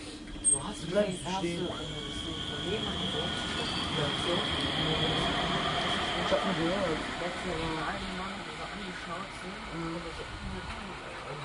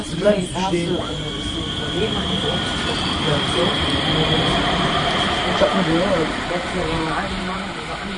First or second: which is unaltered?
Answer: first